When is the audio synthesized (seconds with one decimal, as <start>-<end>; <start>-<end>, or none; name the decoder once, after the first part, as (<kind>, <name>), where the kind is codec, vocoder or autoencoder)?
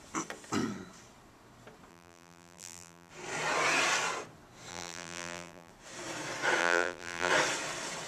1.9-3.1 (vocoder, BigVGAN v2); 4.7-5.7; 6.6-7.3